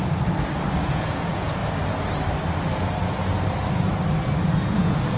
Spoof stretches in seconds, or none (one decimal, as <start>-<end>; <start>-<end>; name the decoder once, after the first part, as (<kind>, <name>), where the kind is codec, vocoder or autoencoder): 0.8-1.6 (vocoder, Vocos); 4.7-5.2